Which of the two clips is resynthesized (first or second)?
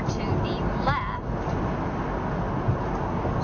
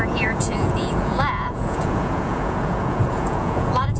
second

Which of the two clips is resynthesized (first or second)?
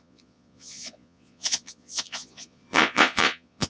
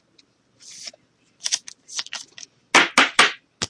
first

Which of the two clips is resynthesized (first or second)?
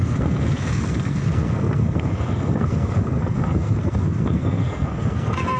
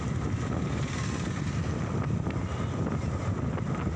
first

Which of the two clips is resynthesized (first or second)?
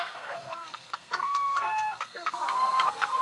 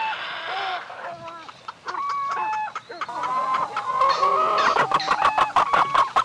first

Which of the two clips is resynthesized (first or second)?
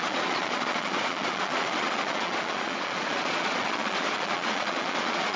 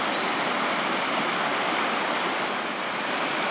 first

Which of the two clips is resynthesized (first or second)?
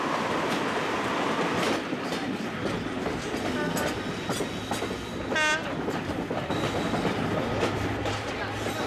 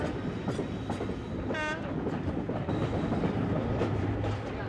second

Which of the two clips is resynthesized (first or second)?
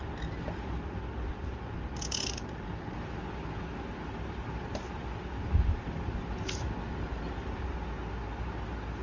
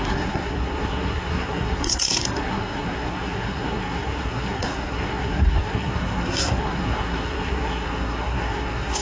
second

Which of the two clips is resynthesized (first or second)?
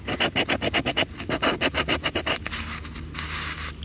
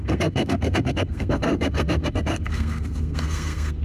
second